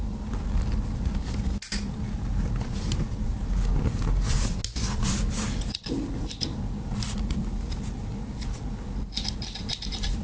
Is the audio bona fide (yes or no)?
yes